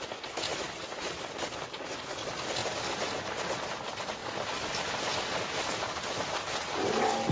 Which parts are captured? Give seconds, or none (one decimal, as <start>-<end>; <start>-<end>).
0.0-0.5; 2.0-2.6; 3.2-7.3